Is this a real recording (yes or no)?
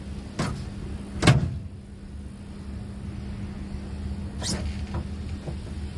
yes